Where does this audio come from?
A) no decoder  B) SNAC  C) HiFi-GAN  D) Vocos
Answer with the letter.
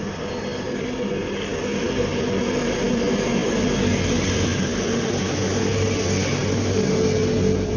A